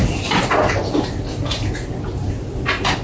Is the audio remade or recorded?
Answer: recorded